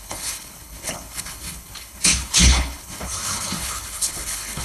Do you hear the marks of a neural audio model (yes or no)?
yes